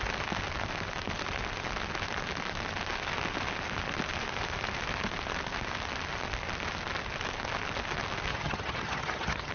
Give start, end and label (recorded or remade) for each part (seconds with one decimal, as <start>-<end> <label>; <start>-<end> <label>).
0.0-8.3 recorded; 8.3-9.5 remade